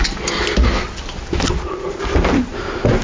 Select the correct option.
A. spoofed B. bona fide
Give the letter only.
B